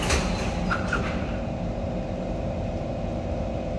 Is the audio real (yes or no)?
no